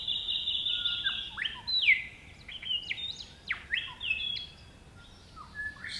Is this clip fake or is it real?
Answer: real